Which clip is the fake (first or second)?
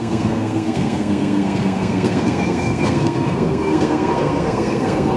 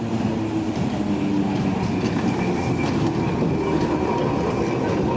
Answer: first